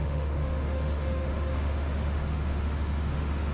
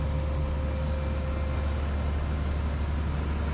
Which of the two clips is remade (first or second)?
first